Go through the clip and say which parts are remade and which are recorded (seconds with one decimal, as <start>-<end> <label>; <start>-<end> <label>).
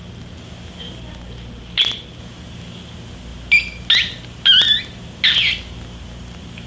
0.0-6.7 recorded